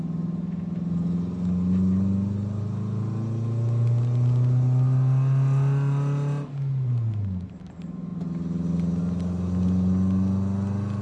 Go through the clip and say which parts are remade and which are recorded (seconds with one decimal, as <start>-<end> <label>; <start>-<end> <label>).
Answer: 0.0-11.0 recorded